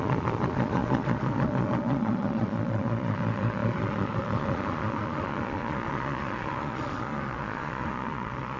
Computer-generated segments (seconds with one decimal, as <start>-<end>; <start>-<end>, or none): 0.0-8.6